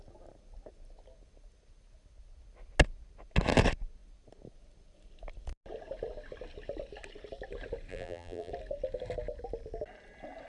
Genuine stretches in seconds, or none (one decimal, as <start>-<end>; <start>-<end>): 0.0-7.9; 8.5-10.5

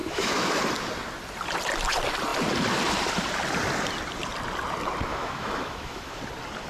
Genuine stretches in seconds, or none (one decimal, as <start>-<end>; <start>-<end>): 0.6-5.1; 6.2-6.7

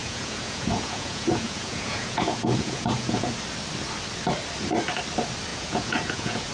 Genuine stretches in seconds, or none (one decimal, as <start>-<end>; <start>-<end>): 3.3-5.5

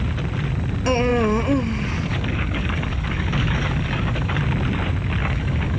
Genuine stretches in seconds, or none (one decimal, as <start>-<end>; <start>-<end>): 0.0-2.1; 4.4-5.2

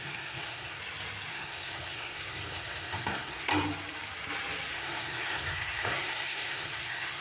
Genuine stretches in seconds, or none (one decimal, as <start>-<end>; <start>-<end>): 0.8-1.3; 3.5-4.7

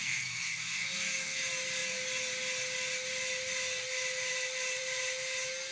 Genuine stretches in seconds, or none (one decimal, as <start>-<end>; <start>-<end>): 1.4-5.7

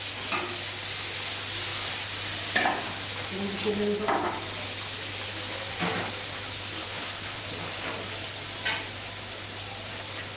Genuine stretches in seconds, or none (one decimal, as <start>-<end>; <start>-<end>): 0.0-6.8; 7.4-10.4